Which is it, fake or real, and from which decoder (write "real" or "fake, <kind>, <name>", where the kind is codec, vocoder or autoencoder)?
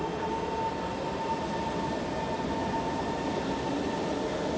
real